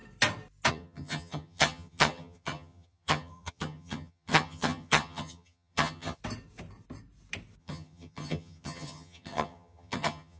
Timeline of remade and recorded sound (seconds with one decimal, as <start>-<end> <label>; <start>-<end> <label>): 0.0-0.7 recorded; 0.7-6.2 remade; 6.2-7.6 recorded; 7.6-10.4 remade